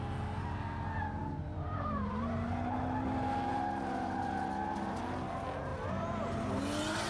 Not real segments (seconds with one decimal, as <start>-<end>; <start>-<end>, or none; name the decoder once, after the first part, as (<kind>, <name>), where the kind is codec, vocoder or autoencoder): 1.2-2.3 (vocoder, BigVGAN v2); 5.7-6.6